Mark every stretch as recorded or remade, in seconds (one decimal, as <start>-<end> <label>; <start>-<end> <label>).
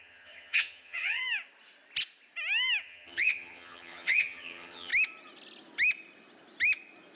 0.0-1.2 remade; 1.2-2.8 recorded; 2.8-4.9 remade; 4.9-7.2 recorded